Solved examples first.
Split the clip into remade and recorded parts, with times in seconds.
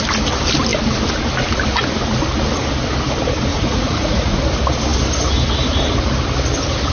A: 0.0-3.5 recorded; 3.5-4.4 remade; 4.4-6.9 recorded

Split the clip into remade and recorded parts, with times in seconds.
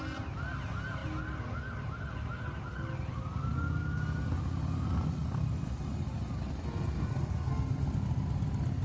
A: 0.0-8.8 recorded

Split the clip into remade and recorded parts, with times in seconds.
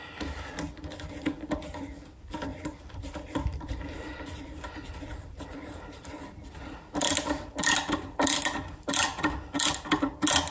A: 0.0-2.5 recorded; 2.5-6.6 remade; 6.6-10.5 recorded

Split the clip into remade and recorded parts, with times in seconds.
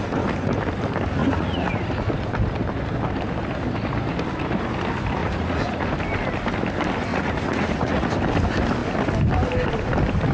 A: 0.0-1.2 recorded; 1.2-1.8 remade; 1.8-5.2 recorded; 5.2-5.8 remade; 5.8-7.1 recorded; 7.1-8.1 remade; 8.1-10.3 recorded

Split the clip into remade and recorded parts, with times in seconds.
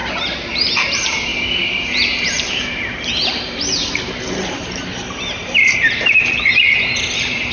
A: 0.0-0.5 recorded; 0.5-7.5 remade